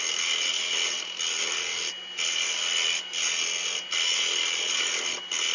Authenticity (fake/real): real